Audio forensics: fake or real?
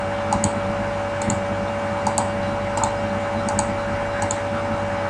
real